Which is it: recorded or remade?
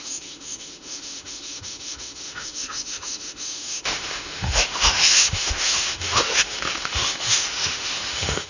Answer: remade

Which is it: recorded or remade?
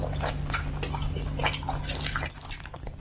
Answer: recorded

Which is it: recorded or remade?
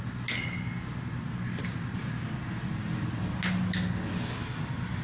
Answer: recorded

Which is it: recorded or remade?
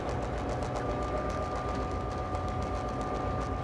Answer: recorded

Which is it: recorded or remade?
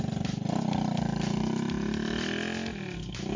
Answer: recorded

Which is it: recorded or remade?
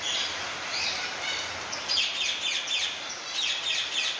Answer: recorded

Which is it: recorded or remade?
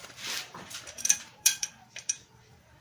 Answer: remade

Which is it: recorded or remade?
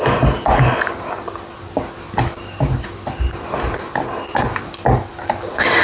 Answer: recorded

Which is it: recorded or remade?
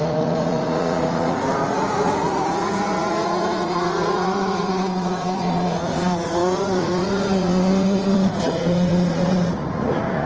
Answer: remade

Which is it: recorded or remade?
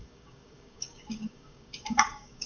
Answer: remade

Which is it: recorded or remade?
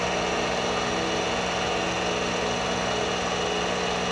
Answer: recorded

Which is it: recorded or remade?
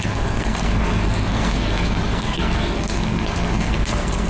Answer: remade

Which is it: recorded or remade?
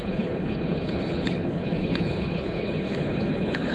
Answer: remade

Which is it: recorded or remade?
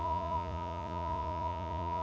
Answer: remade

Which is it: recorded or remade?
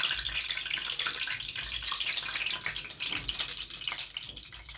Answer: recorded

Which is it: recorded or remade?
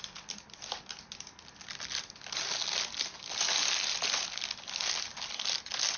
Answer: recorded